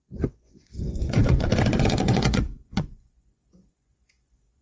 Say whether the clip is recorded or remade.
remade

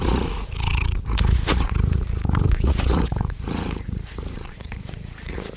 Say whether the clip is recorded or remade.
remade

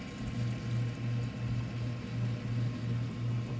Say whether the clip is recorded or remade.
recorded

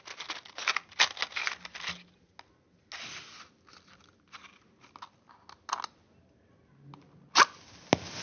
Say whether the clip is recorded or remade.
recorded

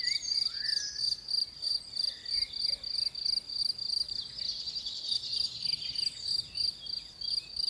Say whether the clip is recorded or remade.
recorded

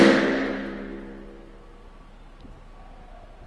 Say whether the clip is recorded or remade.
recorded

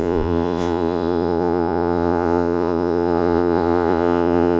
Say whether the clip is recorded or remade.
remade